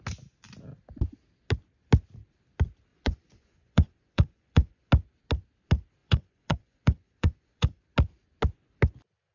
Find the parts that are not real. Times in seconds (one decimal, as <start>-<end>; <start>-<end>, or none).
2.9-4.9; 6.0-7.8